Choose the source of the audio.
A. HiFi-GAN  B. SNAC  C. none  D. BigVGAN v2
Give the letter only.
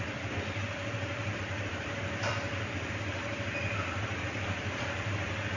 D